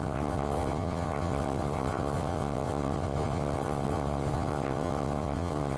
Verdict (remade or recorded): remade